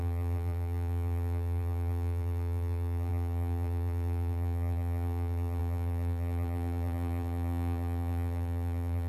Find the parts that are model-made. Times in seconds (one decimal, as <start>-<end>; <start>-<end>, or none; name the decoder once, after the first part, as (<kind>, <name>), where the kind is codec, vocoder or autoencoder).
0.0-9.1 (vocoder, BigVGAN v2)